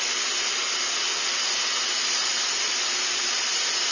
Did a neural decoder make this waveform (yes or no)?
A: no